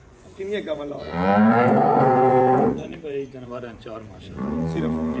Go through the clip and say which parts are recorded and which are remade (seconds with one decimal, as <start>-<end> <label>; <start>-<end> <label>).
0.0-5.2 remade

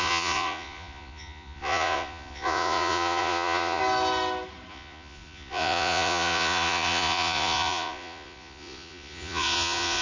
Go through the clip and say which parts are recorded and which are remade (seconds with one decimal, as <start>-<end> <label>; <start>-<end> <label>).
0.0-3.8 remade; 3.8-4.7 recorded; 4.7-10.0 remade

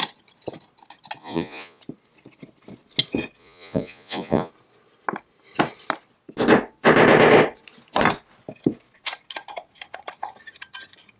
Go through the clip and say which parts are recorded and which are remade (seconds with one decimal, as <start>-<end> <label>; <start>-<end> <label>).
0.0-1.2 recorded; 1.2-1.8 remade; 1.8-3.4 recorded; 3.4-4.5 remade; 4.5-11.2 recorded

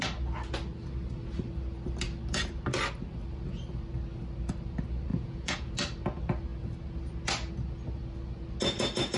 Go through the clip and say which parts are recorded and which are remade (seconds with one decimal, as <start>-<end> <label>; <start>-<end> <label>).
0.0-5.1 recorded; 5.1-5.7 remade; 5.7-9.2 recorded

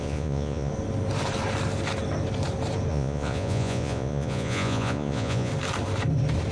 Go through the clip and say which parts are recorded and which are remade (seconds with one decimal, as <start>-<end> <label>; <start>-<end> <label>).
0.0-0.7 remade; 0.7-2.9 recorded; 2.9-5.5 remade; 5.5-6.5 recorded

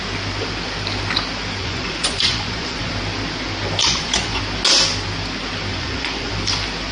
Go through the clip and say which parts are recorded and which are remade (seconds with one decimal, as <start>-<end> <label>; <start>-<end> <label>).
0.0-1.6 recorded; 1.6-2.9 remade; 2.9-3.8 recorded; 3.8-4.4 remade; 4.4-5.7 recorded; 5.7-6.3 remade; 6.3-6.9 recorded

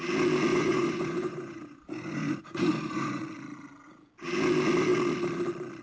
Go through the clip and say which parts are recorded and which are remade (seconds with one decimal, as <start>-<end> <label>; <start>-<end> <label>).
0.0-0.5 recorded; 0.5-3.2 remade; 3.2-5.8 recorded

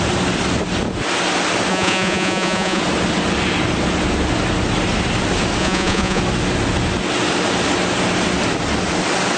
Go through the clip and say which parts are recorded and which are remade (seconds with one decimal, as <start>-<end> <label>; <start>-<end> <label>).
0.0-1.7 recorded; 1.7-2.8 remade; 2.8-5.6 recorded; 5.6-6.2 remade; 6.2-9.4 recorded